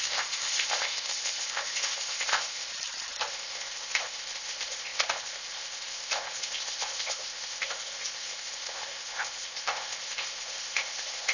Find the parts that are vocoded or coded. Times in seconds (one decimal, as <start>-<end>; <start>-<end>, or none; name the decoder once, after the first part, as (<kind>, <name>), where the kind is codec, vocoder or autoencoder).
0.0-2.7 (codec, ZipCodec); 3.3-11.3